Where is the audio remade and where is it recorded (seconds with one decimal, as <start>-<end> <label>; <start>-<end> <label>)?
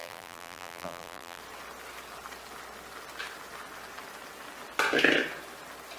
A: 0.0-1.4 remade; 1.4-6.0 recorded